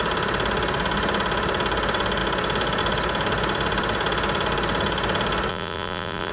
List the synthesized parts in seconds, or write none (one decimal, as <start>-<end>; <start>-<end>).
5.5-6.3

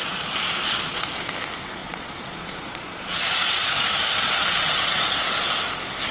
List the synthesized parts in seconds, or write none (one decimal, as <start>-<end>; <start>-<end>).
0.0-1.3; 1.8-5.5

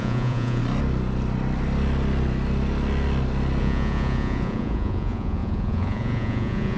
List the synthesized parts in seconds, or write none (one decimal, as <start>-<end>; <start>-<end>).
0.0-0.6; 3.6-6.8

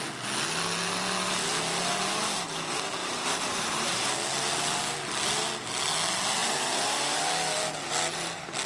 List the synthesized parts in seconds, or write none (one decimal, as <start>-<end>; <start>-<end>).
3.0-4.1

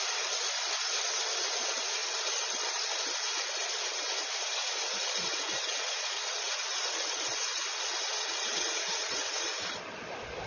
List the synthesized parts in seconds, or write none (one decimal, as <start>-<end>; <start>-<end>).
4.6-9.6

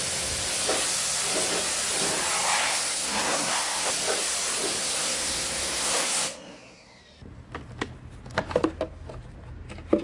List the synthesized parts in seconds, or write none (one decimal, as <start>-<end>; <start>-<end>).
2.6-3.9; 4.8-7.0

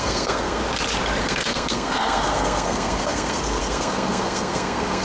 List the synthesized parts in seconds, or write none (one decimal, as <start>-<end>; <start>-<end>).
0.0-0.6; 1.2-5.0

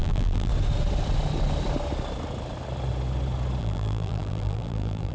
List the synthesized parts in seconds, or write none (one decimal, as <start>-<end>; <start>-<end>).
0.0-0.5; 3.6-5.1